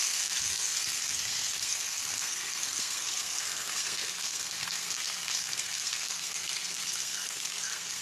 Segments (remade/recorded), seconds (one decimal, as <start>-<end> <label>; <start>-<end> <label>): 0.0-8.0 remade